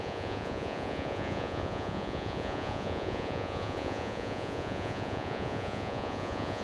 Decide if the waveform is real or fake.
fake